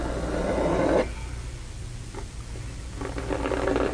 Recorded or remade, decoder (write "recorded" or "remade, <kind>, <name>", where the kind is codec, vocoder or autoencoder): recorded